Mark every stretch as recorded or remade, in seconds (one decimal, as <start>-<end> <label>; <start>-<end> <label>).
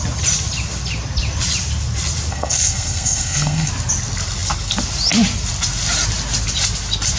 0.0-2.3 recorded; 2.3-3.7 remade; 3.7-7.2 recorded